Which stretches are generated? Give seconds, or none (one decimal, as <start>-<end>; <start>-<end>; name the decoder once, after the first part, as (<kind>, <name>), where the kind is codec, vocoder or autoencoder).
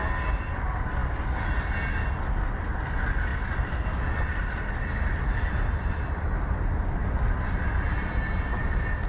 none